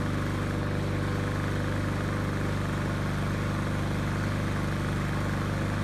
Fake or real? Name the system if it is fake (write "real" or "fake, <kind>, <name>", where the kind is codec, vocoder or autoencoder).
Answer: real